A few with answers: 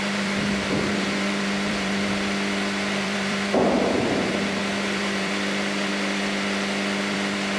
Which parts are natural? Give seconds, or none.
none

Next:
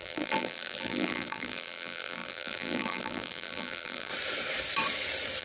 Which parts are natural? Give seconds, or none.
4.1-5.4

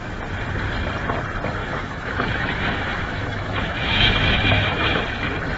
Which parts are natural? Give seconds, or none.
0.0-1.6; 5.0-5.6